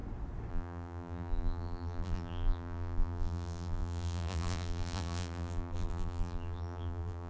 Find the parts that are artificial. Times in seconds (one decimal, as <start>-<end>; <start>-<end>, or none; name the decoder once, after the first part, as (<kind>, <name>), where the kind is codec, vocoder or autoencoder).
0.5-7.3 (vocoder, BigVGAN v2)